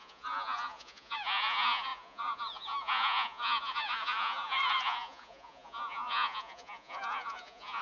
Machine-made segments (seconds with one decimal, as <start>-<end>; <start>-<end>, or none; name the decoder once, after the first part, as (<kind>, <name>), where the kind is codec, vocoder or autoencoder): 0.0-7.8 (vocoder, Vocos)